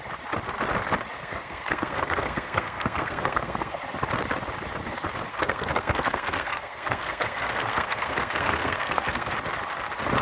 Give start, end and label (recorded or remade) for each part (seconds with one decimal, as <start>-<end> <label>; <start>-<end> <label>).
0.0-1.2 recorded; 1.2-3.8 remade; 3.8-5.3 recorded; 5.3-9.3 remade; 9.3-10.2 recorded